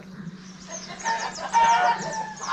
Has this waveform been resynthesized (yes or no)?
no